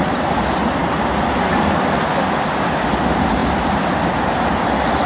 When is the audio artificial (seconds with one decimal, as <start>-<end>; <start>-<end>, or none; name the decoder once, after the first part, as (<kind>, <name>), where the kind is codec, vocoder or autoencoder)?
0.8-2.5 (vocoder, BigVGAN v2); 3.4-4.4